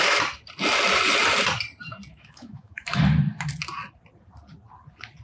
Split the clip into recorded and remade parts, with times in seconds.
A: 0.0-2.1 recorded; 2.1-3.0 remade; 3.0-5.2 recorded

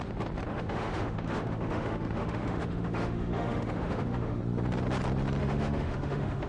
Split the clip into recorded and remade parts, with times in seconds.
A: 0.0-0.5 recorded; 0.5-4.4 remade; 4.4-5.4 recorded; 5.4-6.5 remade

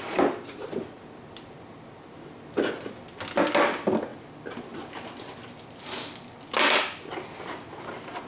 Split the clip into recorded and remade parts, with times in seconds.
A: 0.0-8.3 recorded

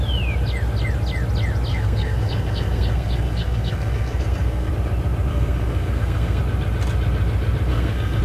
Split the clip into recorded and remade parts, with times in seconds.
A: 0.0-1.7 recorded; 1.7-4.7 remade; 4.7-5.3 recorded; 5.3-6.4 remade; 6.4-7.7 recorded; 7.7-8.2 remade

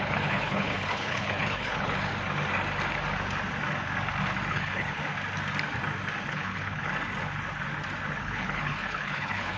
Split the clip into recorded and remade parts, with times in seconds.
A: 0.0-2.1 remade; 2.1-4.5 recorded; 4.5-5.0 remade; 5.0-6.3 recorded; 6.3-6.9 remade; 6.9-8.2 recorded; 8.2-9.6 remade

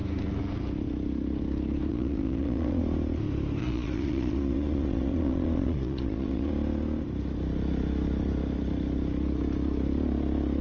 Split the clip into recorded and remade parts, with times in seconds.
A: 0.0-1.9 recorded; 1.9-2.8 remade; 2.8-3.6 recorded; 3.6-6.5 remade; 6.5-10.6 recorded

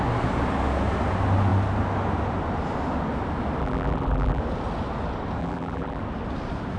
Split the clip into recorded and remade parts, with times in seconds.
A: 0.0-3.6 recorded; 3.6-4.4 remade; 4.4-5.4 recorded; 5.4-6.0 remade; 6.0-6.8 recorded

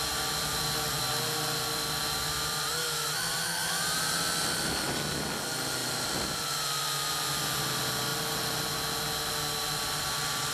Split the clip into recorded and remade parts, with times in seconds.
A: 0.0-3.6 recorded; 3.6-4.2 remade; 4.2-10.5 recorded